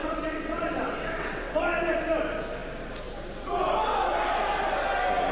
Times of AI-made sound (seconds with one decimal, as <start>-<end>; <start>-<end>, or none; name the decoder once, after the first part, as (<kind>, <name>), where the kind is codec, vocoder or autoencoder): 0.0-1.6 (vocoder, WaveNeXt)